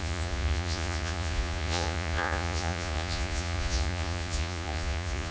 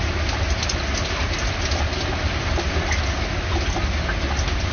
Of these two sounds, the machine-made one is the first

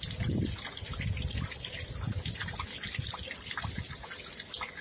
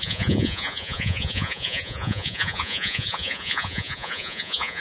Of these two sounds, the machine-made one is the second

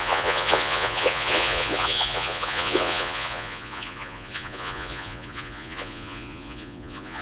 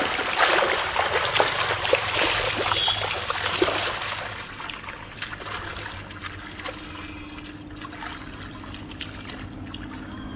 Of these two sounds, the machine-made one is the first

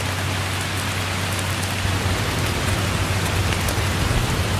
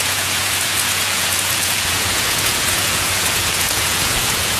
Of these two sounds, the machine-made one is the second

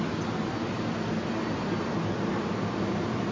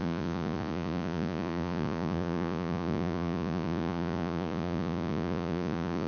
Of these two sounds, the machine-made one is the second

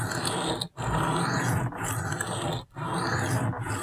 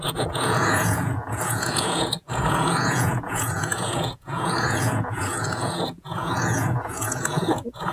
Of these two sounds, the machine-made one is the second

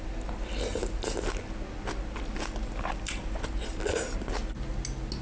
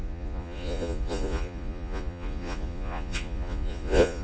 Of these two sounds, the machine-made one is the second